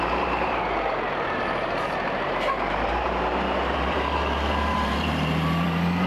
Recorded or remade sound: remade